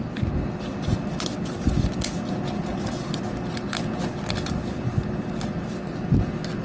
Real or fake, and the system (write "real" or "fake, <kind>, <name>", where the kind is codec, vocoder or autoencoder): real